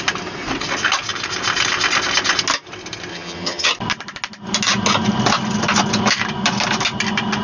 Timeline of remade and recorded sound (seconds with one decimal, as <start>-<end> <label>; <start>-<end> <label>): 0.0-3.1 recorded; 3.1-3.7 remade; 3.7-7.4 recorded